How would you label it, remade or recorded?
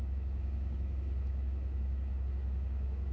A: remade